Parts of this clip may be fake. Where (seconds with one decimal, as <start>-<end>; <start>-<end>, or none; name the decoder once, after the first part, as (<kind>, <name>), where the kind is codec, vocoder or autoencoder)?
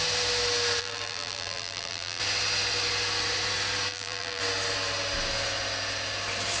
0.8-2.2 (vocoder, BigVGAN v2); 3.9-4.4